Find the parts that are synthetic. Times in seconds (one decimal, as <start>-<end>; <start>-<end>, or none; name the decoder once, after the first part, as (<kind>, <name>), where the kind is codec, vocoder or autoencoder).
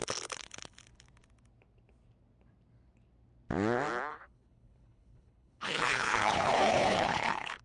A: 4.1-7.6 (codec, HILCodec)